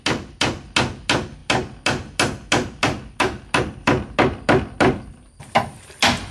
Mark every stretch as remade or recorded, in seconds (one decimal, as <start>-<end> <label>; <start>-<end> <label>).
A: 0.0-6.3 recorded